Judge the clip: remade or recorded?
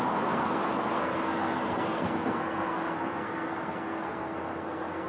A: remade